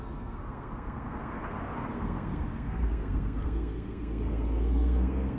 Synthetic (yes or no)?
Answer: yes